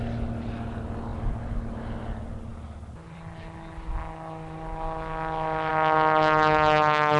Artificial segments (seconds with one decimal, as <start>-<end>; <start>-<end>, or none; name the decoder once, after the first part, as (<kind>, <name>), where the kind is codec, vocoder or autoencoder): none